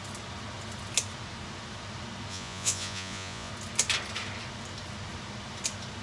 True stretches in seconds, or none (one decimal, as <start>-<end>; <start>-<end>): 0.0-2.3; 3.5-6.0